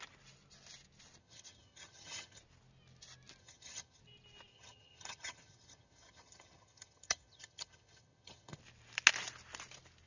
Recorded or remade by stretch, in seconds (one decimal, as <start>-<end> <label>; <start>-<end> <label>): 0.0-1.2 recorded; 1.2-2.4 remade; 2.4-3.4 recorded; 3.4-4.0 remade; 4.0-4.5 recorded; 4.5-8.6 remade; 8.6-10.1 recorded